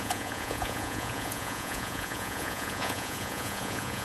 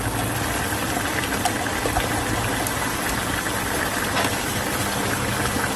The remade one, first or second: first